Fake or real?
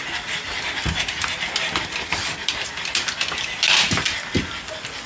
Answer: real